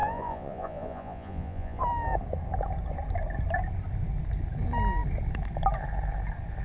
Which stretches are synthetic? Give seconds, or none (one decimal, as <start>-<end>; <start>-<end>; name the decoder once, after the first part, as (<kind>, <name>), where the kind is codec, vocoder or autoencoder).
0.0-1.8 (vocoder, Vocos)